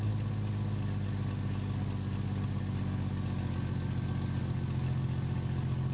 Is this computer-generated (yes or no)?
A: no